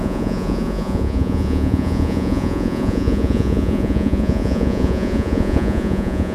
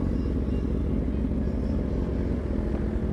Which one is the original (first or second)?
second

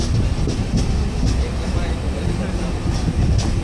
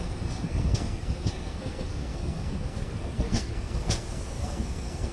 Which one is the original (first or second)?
first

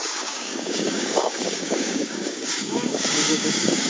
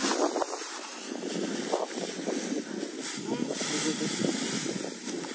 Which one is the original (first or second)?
second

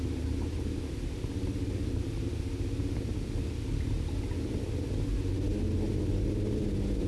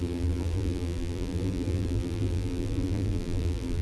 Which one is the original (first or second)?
first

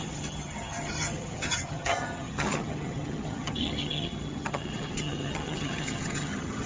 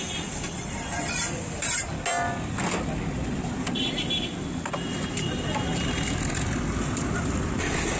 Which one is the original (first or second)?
second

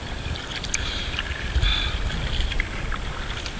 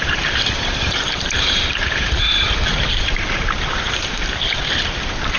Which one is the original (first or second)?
first